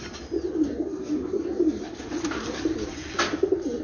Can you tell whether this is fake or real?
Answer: real